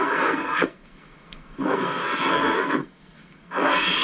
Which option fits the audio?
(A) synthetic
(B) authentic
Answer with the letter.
A